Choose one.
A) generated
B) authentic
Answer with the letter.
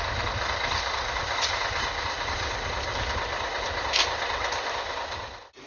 B